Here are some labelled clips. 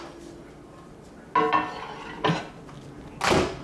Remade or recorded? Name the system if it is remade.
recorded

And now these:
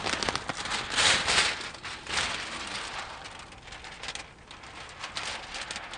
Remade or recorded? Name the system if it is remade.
recorded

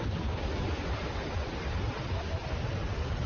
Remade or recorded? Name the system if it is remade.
recorded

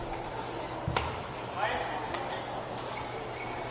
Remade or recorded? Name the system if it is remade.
recorded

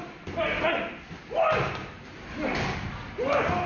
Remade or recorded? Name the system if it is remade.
recorded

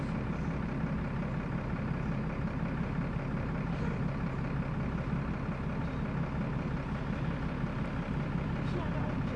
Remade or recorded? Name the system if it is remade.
recorded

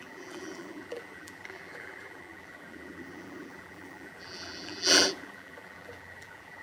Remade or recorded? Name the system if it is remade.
remade, vocoder, BigVGAN v2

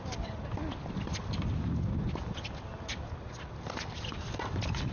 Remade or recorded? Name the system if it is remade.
recorded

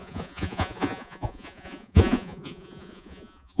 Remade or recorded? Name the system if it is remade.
remade, vocoder, Vocos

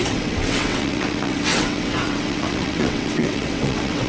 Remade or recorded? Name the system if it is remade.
remade, vocoder, WaveNeXt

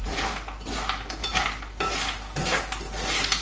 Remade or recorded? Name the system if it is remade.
recorded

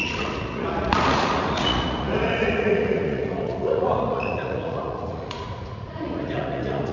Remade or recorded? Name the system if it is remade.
remade, vocoder, Vocos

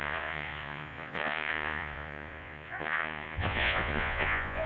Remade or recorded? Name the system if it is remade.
remade, vocoder, Vocos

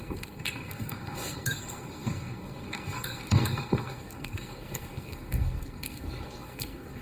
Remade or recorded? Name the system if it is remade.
remade, codec, SNAC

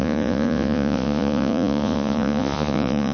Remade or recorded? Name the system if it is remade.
remade, vocoder, Vocos